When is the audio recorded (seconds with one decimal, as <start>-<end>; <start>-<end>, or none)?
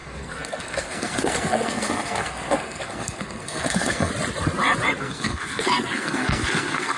4.1-5.0